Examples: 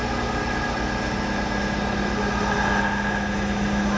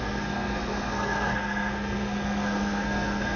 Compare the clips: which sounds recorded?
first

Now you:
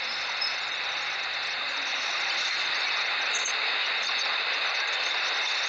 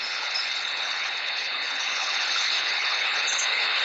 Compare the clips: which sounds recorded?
first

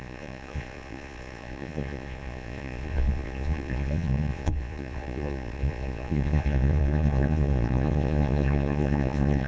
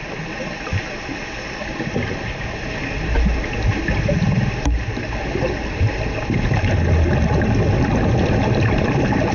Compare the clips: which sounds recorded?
second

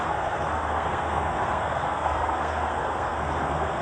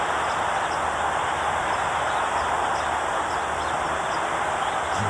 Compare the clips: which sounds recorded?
second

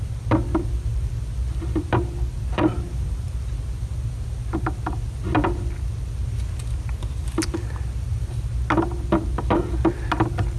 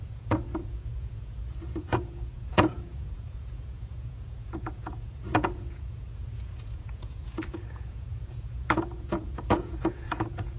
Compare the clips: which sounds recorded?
first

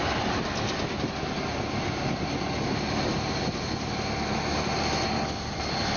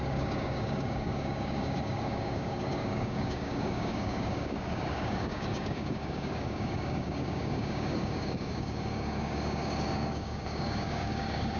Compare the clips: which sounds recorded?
first